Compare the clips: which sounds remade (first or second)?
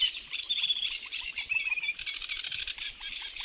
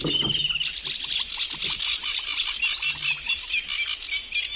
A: first